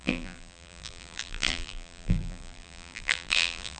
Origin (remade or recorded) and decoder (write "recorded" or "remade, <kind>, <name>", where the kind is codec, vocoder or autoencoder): remade, vocoder, BigVGAN v2